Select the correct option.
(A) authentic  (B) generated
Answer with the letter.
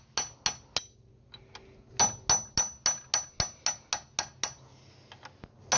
A